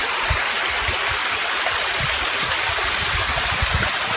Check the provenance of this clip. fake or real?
real